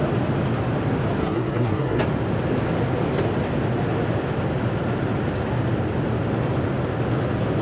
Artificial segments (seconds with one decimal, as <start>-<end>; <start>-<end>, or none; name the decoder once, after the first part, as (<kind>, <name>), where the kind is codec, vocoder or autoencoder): 1.2-2.0 (codec, SNAC)